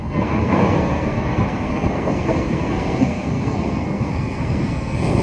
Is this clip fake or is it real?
fake